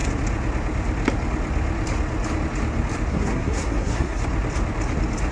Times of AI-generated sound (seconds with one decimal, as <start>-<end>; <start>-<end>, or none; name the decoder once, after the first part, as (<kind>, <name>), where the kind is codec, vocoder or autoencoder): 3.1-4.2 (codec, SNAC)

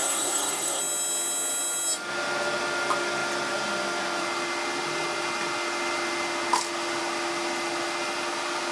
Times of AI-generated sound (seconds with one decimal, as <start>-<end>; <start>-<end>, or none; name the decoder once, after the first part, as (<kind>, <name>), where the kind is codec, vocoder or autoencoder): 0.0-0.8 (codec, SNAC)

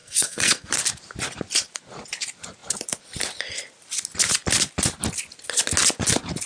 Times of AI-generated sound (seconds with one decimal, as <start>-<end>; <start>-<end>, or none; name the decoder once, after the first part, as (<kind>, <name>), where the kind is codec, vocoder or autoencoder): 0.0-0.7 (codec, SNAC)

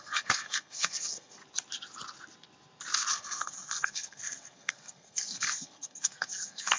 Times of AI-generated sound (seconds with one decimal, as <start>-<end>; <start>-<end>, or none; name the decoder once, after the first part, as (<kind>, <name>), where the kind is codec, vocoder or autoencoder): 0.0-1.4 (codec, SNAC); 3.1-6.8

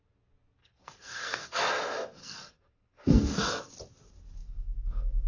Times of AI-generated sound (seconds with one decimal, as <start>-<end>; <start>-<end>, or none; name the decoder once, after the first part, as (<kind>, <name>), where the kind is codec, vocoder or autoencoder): 0.6-1.6 (codec, SNAC); 2.2-3.7; 4.4-5.3